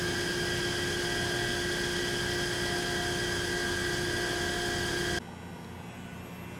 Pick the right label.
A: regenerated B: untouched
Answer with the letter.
B